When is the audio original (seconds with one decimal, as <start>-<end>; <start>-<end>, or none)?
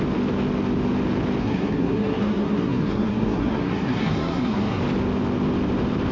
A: 0.0-1.4; 4.8-6.1